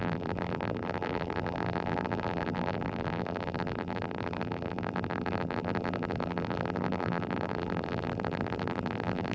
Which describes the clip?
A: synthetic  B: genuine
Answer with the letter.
A